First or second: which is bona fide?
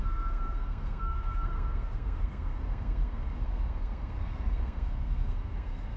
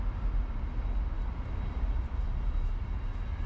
second